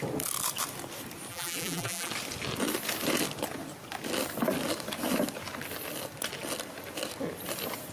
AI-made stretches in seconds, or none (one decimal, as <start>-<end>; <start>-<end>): 1.3-2.1